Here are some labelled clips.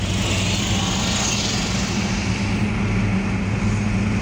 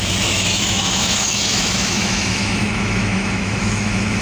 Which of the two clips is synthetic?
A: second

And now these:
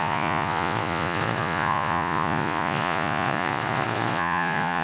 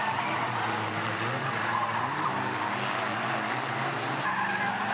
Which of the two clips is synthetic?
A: first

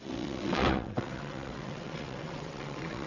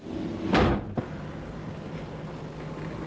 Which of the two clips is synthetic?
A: first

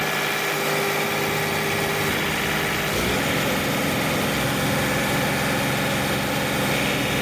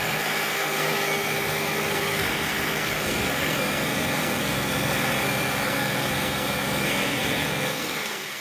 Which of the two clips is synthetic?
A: second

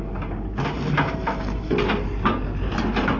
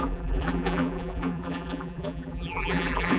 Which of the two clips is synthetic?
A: second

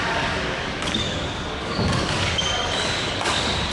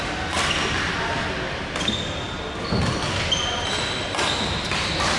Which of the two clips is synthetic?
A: first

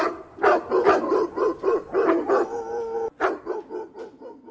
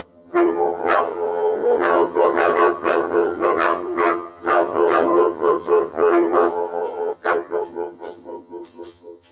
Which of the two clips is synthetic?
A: second